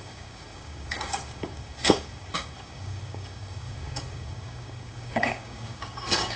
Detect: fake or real fake